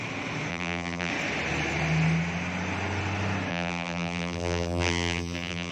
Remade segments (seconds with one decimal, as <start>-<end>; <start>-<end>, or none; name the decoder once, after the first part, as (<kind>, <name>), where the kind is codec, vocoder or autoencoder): 0.5-1.1 (vocoder, BigVGAN v2); 3.5-5.7